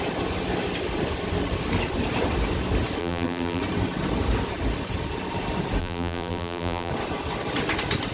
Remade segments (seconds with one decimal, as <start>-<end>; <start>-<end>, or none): 3.0-3.6; 5.8-6.9